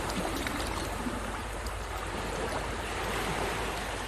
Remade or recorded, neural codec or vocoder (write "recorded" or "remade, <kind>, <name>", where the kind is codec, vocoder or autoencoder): remade, vocoder, BigVGAN v2